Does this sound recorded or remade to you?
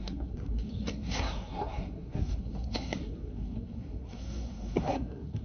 remade